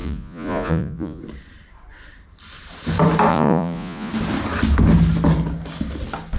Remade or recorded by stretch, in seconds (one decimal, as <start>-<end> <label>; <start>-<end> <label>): 0.0-1.2 remade; 1.2-3.3 recorded; 3.3-4.1 remade; 4.1-6.4 recorded